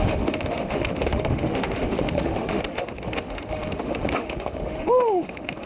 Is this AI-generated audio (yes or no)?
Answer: yes